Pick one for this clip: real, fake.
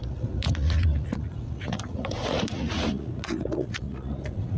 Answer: fake